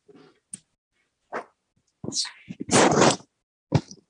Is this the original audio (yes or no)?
yes